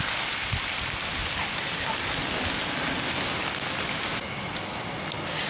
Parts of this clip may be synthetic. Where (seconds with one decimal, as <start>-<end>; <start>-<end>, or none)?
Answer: 1.2-2.0